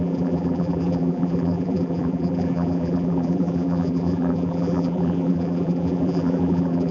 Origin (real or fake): fake